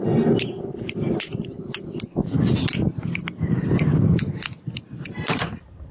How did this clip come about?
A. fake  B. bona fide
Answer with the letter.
B